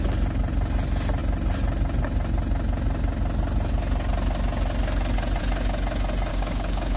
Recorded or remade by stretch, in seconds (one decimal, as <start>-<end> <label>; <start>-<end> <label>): 0.0-6.3 recorded; 6.3-7.0 remade